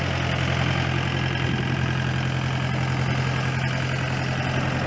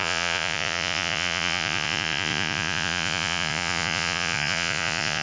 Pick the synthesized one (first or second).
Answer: second